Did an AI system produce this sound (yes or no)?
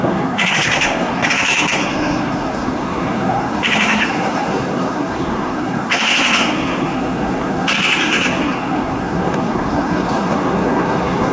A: yes